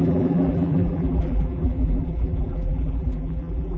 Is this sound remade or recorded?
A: remade